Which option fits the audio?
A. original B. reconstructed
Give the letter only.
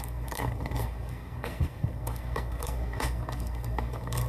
B